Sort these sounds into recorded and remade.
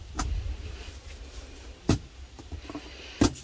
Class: recorded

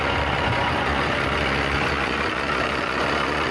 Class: remade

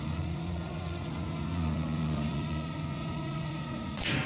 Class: remade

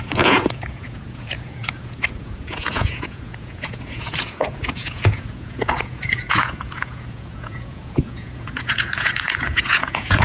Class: remade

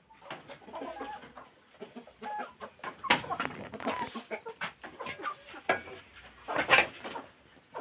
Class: recorded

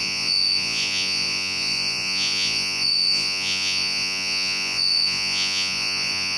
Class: remade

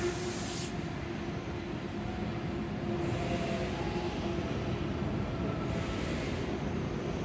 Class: recorded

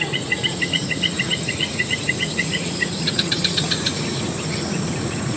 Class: remade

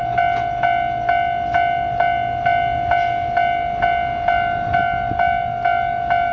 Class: recorded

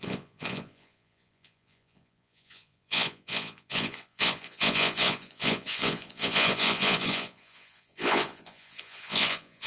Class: remade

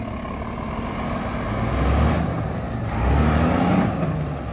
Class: recorded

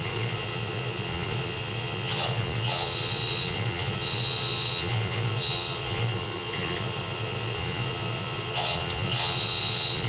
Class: remade